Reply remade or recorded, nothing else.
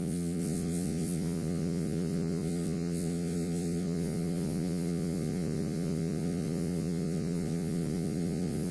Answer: remade